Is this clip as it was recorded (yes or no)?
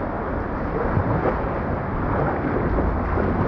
yes